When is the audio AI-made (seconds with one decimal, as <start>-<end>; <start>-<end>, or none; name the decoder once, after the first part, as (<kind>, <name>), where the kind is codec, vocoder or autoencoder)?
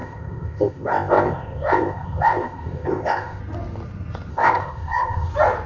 0.0-3.4 (codec, ZipCodec); 4.3-5.3